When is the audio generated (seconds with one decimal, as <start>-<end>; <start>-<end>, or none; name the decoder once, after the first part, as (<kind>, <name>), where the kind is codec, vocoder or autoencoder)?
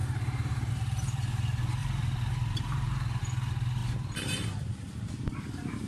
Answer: 0.0-0.7 (vocoder, BigVGAN v2); 1.8-3.2; 3.8-5.1